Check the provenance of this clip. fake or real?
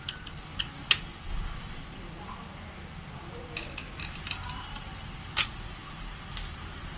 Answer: real